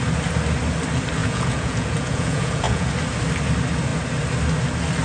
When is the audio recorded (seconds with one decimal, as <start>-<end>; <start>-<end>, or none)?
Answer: 0.0-1.2; 2.9-5.0